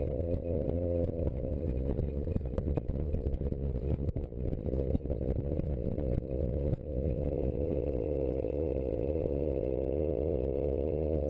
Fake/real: fake